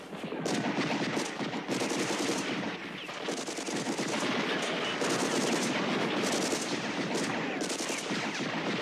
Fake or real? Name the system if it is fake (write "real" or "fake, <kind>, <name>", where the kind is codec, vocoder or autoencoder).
real